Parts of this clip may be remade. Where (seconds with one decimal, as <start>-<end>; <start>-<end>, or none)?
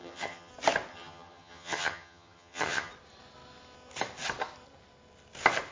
0.0-0.5; 0.9-2.9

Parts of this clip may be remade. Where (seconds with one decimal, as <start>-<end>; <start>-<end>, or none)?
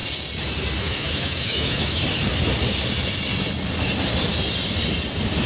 0.8-2.0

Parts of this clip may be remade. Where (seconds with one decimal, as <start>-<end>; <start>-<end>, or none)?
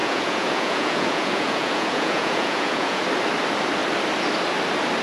0.0-3.0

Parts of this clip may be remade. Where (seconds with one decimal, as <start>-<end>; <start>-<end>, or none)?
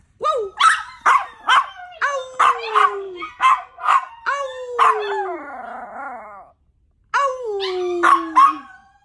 2.7-4.1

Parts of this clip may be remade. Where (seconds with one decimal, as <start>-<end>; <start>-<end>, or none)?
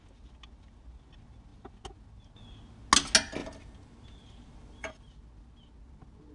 3.4-4.9